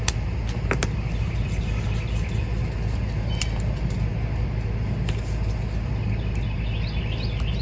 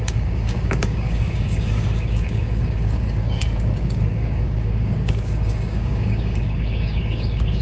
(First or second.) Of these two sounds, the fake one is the second